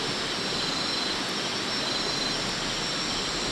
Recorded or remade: recorded